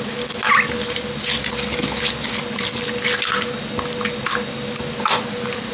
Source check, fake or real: real